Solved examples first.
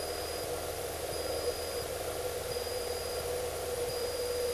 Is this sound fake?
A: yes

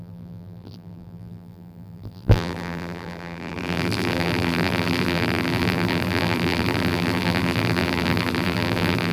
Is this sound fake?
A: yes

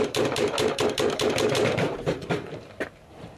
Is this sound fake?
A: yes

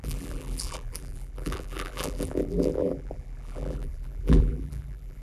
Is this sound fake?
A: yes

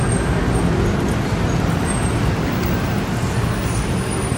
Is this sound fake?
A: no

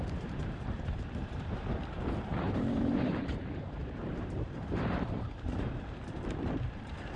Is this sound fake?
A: yes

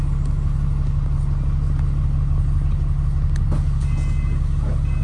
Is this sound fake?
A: no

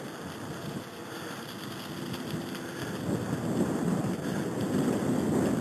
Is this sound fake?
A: no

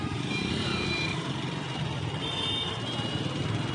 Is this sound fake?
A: yes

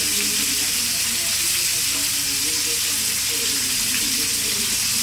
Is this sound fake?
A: no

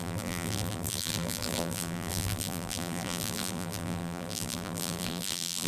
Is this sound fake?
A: yes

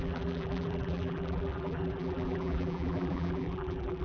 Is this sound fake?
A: yes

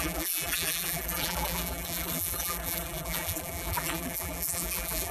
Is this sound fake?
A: yes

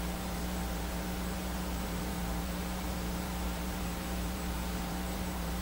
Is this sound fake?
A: yes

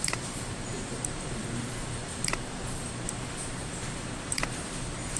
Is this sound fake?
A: yes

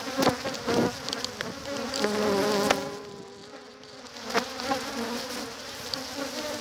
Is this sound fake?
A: no